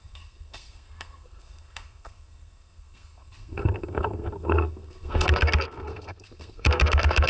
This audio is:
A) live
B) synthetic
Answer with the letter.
B